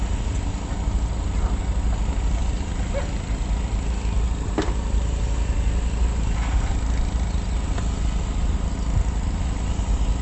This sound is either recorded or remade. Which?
recorded